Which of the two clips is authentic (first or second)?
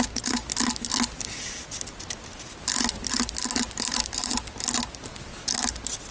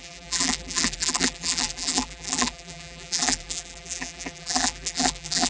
first